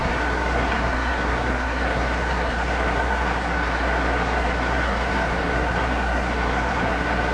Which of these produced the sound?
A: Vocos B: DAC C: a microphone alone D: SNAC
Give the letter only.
D